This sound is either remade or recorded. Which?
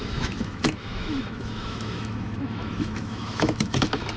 remade